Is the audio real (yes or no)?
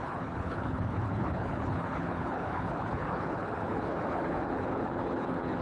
no